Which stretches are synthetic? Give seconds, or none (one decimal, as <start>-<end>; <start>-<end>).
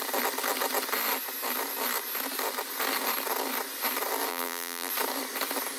4.3-4.9